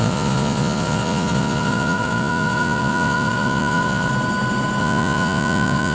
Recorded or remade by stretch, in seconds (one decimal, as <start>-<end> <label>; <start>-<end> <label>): 0.0-4.1 remade; 4.1-4.8 recorded; 4.8-5.9 remade